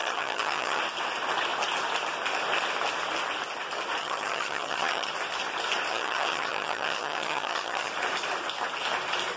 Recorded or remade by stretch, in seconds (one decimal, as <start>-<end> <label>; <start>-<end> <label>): 0.0-0.8 remade; 0.8-4.0 recorded; 4.0-5.1 remade; 5.1-5.9 recorded; 5.9-7.9 remade; 7.9-9.4 recorded